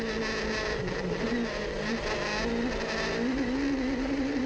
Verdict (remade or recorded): recorded